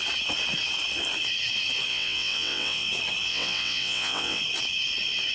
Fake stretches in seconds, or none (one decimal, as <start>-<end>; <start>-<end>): 1.9-2.9; 3.3-4.4